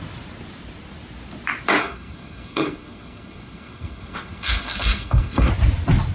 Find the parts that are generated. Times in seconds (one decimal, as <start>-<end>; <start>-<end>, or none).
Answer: 1.8-5.5